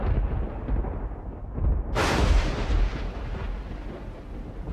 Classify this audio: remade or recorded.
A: recorded